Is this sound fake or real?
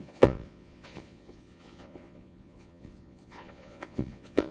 fake